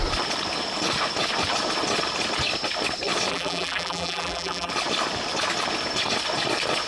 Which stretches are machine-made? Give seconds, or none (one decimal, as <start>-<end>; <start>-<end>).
3.3-4.7